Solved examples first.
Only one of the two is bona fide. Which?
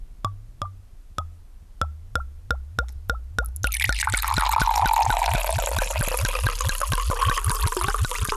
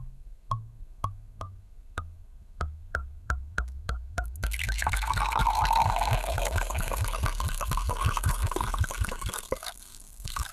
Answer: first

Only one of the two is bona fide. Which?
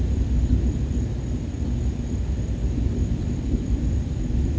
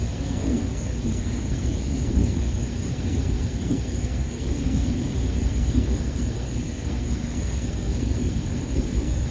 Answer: first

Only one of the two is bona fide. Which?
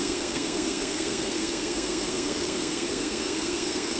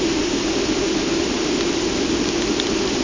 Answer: second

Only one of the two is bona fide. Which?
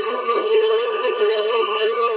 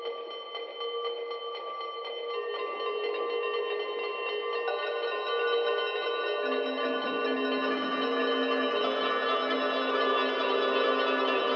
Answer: second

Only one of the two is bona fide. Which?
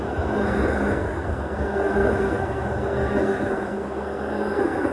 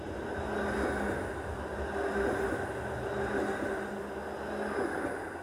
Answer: second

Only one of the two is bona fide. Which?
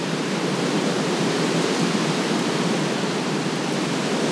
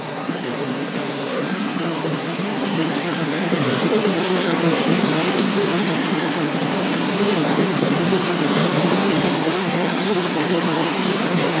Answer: first